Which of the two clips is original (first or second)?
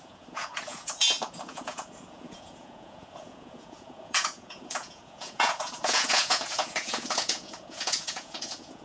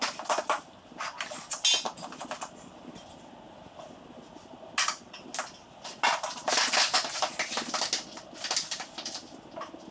second